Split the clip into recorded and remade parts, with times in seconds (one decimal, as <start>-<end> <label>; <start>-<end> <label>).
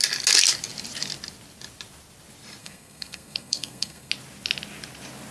0.0-2.6 recorded; 2.6-4.1 remade; 4.1-5.3 recorded